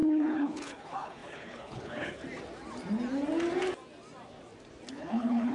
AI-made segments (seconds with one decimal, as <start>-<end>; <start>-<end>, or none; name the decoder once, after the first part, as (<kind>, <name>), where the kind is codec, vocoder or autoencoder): 0.0-2.2 (codec, HILCodec); 4.9-5.5